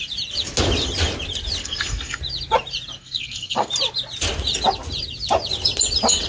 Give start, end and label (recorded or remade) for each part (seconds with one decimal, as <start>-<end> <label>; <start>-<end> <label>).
0.0-1.6 recorded; 1.6-2.2 remade; 2.2-3.0 recorded; 3.0-3.7 remade; 3.7-6.3 recorded